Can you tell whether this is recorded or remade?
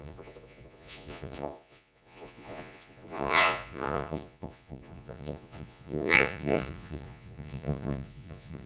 remade